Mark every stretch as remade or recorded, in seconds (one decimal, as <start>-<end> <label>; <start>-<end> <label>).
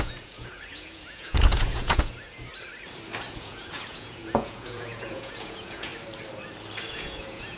0.0-2.5 remade; 2.5-3.3 recorded; 3.3-5.9 remade; 5.9-6.9 recorded; 6.9-7.6 remade